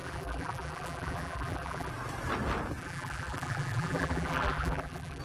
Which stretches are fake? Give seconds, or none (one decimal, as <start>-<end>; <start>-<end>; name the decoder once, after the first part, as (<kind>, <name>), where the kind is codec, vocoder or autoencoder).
0.0-1.9 (vocoder, BigVGAN v2); 2.8-5.2